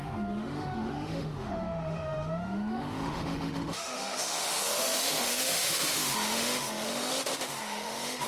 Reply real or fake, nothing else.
fake